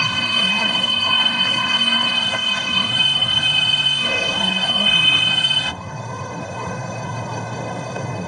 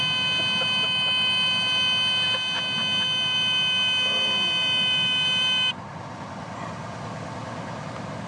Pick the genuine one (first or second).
second